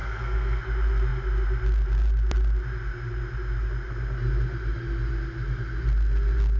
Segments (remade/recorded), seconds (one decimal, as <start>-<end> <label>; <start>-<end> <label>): 0.0-0.6 remade; 0.6-6.6 recorded